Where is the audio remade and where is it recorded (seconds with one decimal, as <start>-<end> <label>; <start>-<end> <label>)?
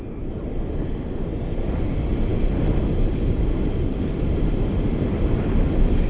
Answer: 0.0-6.1 recorded